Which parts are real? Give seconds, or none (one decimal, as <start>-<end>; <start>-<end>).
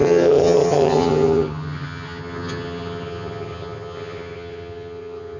none